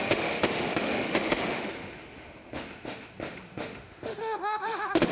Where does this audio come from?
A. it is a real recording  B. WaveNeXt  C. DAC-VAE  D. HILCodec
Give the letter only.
C